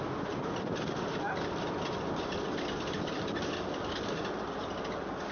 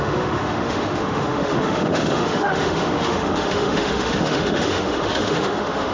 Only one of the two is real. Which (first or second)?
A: first